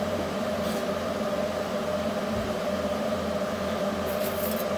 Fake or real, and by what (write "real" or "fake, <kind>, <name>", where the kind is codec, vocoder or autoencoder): fake, vocoder, BigVGAN v2